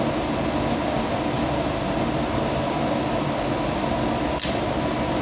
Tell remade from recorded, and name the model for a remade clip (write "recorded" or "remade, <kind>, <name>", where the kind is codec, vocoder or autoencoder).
recorded